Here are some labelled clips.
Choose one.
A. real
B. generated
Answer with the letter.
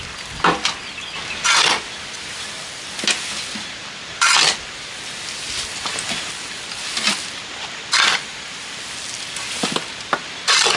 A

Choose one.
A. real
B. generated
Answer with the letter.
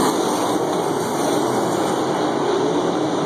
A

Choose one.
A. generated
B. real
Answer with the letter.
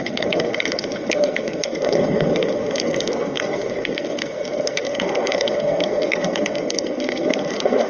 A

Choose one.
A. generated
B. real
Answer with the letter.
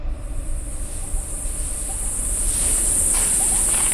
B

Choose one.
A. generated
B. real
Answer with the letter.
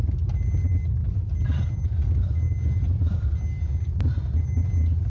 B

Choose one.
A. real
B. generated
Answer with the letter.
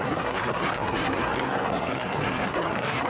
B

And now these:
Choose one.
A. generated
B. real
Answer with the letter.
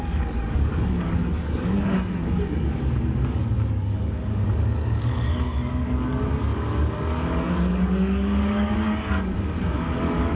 A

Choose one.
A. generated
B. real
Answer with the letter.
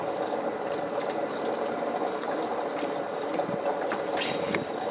B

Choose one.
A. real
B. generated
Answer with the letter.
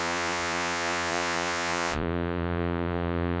B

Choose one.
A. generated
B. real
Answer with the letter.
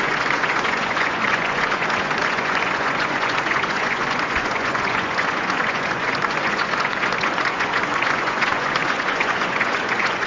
A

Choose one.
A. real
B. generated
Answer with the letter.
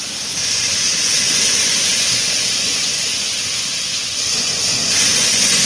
B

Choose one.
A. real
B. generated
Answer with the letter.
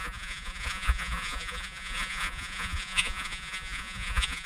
B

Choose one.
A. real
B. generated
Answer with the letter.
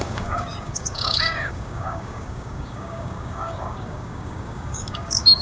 B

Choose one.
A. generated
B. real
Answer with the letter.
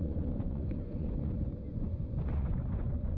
A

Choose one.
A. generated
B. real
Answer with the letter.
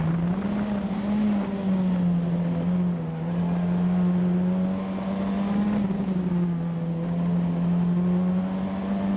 B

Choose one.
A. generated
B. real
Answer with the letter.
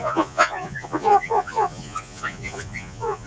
A